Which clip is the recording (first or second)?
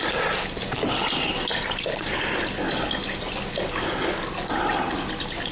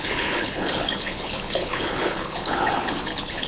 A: first